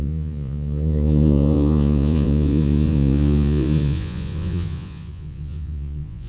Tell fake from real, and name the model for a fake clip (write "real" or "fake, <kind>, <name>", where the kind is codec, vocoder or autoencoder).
fake, vocoder, Vocos